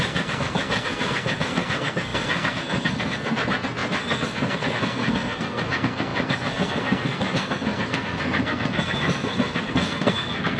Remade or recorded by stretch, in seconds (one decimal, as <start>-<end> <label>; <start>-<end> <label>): 0.0-10.6 remade